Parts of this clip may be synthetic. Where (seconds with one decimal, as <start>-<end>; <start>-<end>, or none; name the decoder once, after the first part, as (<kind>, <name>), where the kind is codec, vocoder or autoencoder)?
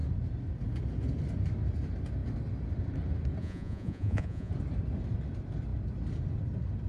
3.4-4.5 (vocoder, Vocos)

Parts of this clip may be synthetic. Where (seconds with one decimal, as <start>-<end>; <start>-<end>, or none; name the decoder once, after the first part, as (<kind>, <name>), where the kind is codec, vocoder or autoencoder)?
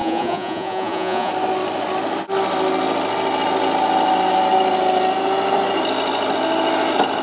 0.0-1.3 (vocoder, Vocos)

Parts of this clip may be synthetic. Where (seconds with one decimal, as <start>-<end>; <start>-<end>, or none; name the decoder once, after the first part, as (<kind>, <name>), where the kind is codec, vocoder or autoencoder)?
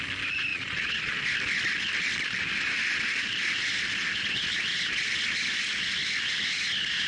0.5-1.2 (vocoder, Vocos)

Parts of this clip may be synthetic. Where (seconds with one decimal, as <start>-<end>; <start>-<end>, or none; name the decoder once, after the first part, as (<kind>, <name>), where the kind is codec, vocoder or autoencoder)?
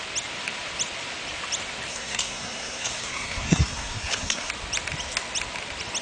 1.9-4.5 (codec, SNAC)